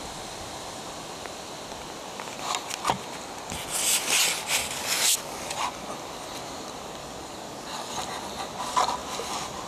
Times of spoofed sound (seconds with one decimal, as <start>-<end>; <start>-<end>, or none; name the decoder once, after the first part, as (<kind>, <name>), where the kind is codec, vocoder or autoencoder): 4.6-5.6 (codec, DAC); 7.0-7.9